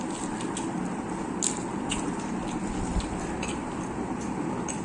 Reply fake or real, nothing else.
real